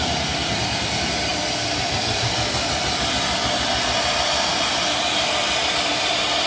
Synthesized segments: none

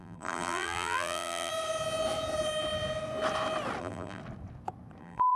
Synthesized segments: 0.0-1.5 (vocoder, BigVGAN v2); 3.8-4.2; 5.0-5.4

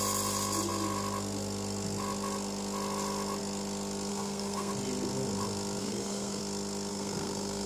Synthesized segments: 4.1-4.7 (codec, SNAC); 5.8-6.4; 6.9-7.7

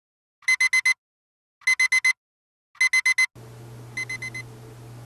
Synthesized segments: none